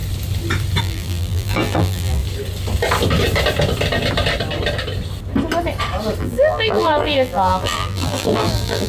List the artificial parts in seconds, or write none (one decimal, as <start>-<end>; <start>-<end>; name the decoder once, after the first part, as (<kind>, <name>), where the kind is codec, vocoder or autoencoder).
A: 0.8-2.2 (vocoder, BigVGAN v2); 6.2-8.9